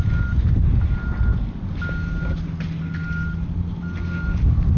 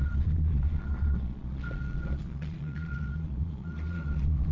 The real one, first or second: first